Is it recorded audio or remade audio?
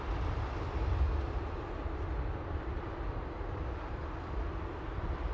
recorded